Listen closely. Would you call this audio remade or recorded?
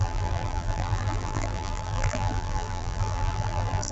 remade